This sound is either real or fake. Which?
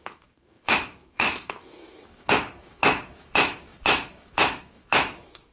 fake